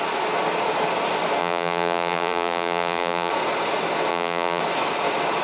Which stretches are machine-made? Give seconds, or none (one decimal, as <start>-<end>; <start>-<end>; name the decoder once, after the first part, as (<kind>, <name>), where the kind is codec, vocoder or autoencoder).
1.4-3.3 (vocoder, BigVGAN v2); 4.1-4.6